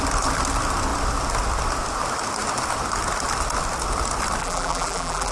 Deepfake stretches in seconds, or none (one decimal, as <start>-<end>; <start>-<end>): 4.4-5.3